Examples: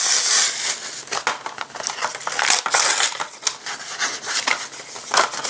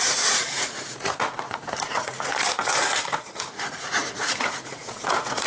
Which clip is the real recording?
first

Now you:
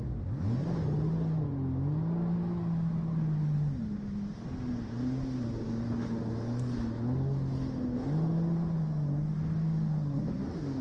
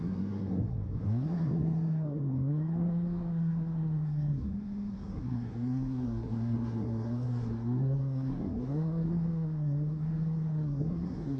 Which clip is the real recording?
first